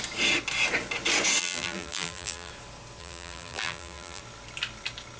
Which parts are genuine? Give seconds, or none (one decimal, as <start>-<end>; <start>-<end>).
0.0-1.4; 2.5-3.0; 4.2-5.2